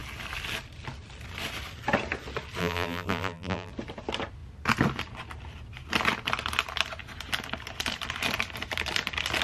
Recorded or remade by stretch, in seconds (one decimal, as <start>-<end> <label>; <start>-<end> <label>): 0.0-2.6 recorded; 2.6-3.7 remade; 3.7-9.4 recorded